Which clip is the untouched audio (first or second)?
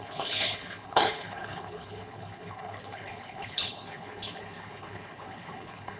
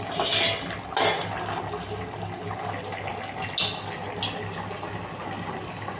second